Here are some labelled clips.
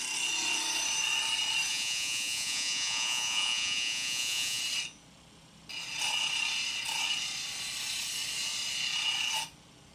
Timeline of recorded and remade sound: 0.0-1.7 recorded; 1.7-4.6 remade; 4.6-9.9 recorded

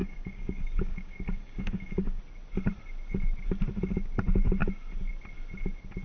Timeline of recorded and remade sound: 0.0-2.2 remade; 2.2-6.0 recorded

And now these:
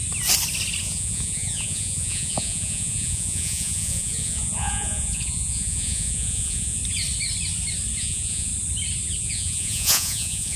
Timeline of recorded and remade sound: 0.0-0.8 recorded; 0.8-6.8 remade; 6.8-8.0 recorded; 8.0-8.5 remade; 8.5-9.2 recorded; 9.2-10.6 remade

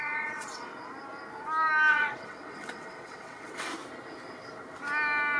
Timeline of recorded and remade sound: 0.0-0.7 remade; 0.7-1.9 recorded; 1.9-3.7 remade; 3.7-5.4 recorded

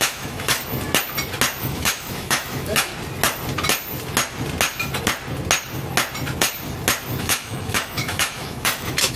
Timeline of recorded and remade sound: 0.0-0.6 remade; 0.6-1.6 recorded; 1.6-2.9 remade; 2.9-7.2 recorded; 7.2-9.2 remade